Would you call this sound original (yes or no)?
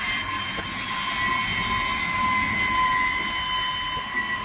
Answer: yes